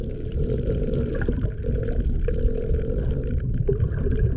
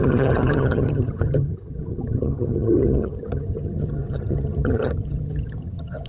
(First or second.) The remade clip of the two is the second